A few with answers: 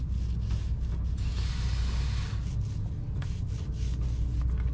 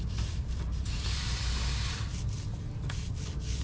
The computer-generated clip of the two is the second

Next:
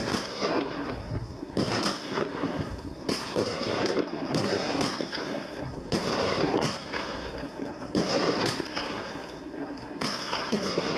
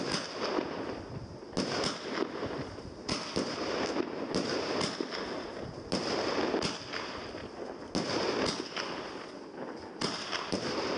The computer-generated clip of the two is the first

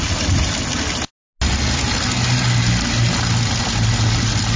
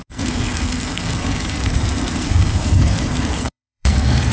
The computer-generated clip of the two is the second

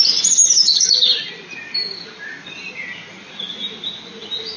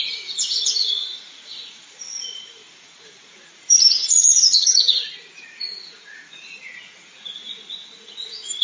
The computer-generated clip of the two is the second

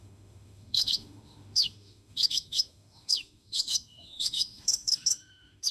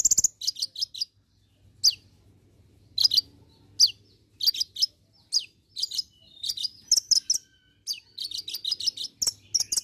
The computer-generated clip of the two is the first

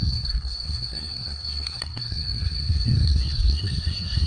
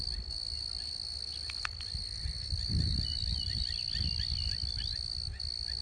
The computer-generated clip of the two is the first